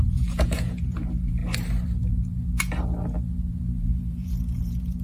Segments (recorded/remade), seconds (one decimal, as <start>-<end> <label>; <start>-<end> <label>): 0.0-1.4 remade; 1.4-3.5 recorded; 3.5-5.0 remade